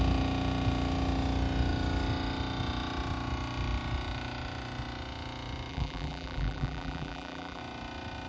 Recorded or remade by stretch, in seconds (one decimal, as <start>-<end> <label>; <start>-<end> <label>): 0.0-5.7 recorded; 5.7-7.6 remade; 7.6-8.3 recorded